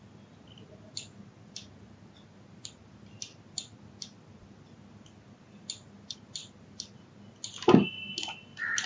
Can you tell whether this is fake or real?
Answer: real